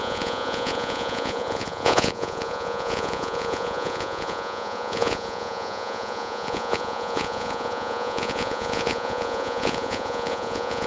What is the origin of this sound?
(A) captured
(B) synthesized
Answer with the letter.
B